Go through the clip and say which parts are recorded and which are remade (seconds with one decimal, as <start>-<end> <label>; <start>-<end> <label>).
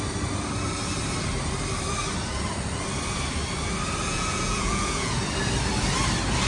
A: 0.0-4.1 recorded; 4.1-5.2 remade; 5.2-6.5 recorded